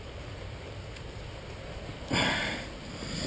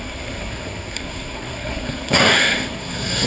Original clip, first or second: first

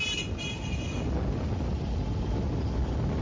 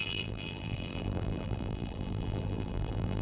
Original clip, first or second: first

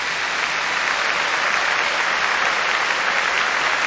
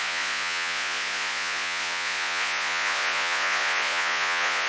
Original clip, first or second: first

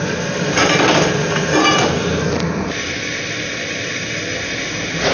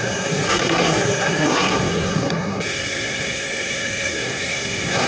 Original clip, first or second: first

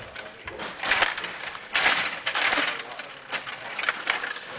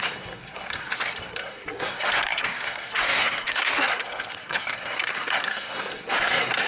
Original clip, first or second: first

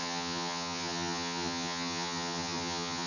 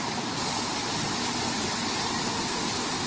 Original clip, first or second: second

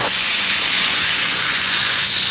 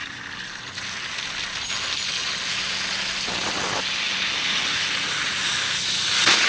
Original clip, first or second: second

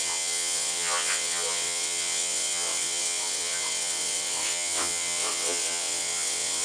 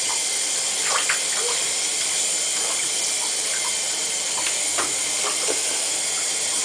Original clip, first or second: second